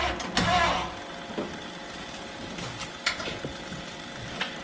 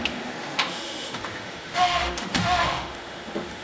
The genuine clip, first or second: first